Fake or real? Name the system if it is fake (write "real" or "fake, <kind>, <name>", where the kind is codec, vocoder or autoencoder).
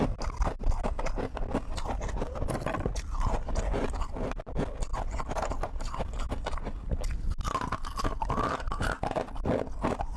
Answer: real